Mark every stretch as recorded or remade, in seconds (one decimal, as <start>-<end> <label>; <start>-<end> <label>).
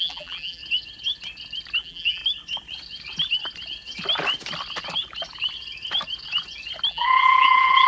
0.0-0.6 remade; 0.6-1.8 recorded; 1.8-2.2 remade; 2.2-6.9 recorded; 6.9-7.9 remade